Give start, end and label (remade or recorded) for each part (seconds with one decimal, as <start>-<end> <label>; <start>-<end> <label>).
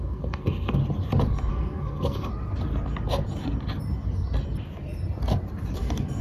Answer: 0.0-0.8 remade; 0.8-1.5 recorded; 1.5-2.3 remade; 2.3-6.2 recorded